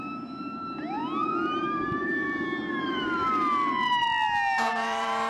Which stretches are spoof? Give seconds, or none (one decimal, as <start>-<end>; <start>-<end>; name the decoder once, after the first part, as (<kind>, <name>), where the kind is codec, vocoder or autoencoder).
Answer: 0.0-1.0 (vocoder, BigVGAN v2); 1.6-3.2; 4.7-5.3